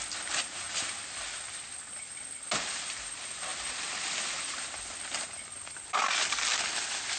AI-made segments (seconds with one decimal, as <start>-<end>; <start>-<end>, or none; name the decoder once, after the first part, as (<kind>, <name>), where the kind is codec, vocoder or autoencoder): none